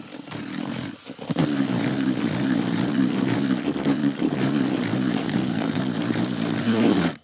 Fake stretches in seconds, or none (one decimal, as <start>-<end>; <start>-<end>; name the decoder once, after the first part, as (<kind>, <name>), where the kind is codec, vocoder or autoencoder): 5.2-5.8 (codec, SNAC)